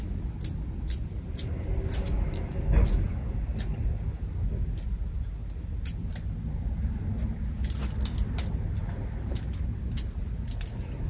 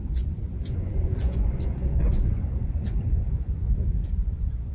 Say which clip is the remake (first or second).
second